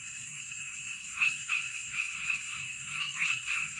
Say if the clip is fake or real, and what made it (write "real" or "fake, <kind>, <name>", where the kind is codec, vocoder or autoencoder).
fake, codec, SNAC